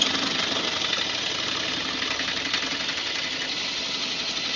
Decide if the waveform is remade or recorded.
recorded